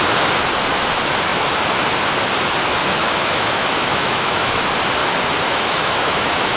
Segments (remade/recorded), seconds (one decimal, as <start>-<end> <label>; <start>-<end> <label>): 0.0-3.0 recorded; 3.0-4.6 remade; 4.6-5.0 recorded; 5.0-6.6 remade